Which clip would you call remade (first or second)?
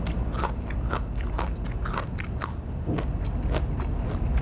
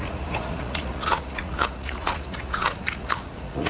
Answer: second